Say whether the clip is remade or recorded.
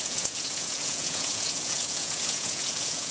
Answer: remade